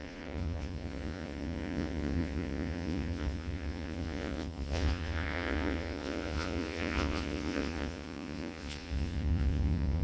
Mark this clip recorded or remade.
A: remade